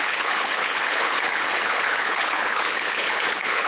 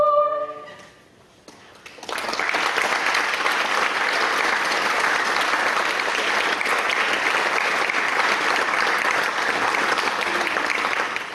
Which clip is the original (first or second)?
second